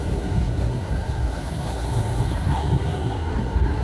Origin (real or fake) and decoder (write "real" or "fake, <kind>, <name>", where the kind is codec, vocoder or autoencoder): fake, codec, SNAC